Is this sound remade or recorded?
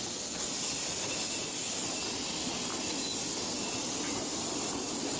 recorded